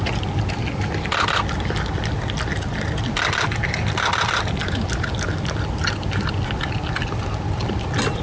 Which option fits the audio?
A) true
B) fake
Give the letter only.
A